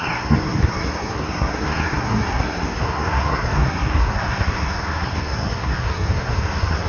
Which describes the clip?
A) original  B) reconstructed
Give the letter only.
B